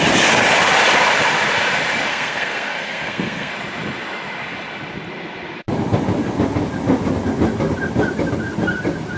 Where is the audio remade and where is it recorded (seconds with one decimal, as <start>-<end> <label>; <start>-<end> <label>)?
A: 0.0-2.1 recorded; 2.1-3.5 remade; 3.5-9.2 recorded